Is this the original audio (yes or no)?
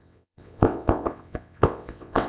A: no